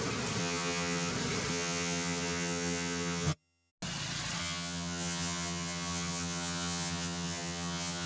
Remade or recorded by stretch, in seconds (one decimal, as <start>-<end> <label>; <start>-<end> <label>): 0.0-0.4 recorded; 0.4-1.1 remade; 1.1-1.5 recorded; 1.5-3.7 remade; 3.7-4.4 recorded; 4.4-8.1 remade

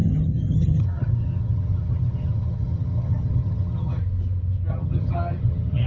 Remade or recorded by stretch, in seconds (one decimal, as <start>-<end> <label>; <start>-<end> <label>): 0.0-4.0 remade; 4.0-4.7 recorded; 4.7-5.9 remade

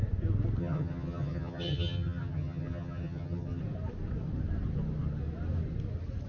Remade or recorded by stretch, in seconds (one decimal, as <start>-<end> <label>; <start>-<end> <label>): 0.0-0.6 recorded; 0.6-3.6 remade; 3.6-6.3 recorded

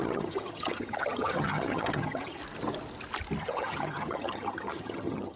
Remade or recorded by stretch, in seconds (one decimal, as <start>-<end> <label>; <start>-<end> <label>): 0.0-2.4 remade; 2.4-3.4 recorded; 3.4-5.4 remade

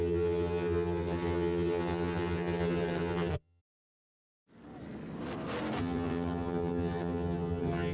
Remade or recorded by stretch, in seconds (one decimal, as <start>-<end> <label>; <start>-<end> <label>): 0.0-3.6 remade; 3.6-5.8 recorded; 5.8-7.9 remade